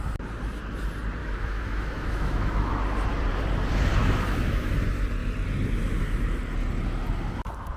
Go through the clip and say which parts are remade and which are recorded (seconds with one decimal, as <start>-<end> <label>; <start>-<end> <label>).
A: 0.0-1.2 recorded; 1.2-2.7 remade; 2.7-4.0 recorded; 4.0-4.7 remade; 4.7-7.8 recorded